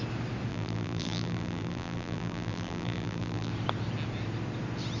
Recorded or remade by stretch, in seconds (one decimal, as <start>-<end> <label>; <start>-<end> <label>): 0.0-0.5 recorded; 0.5-3.5 remade; 3.5-5.0 recorded